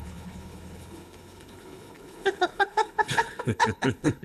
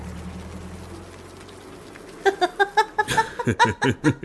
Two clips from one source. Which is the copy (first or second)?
first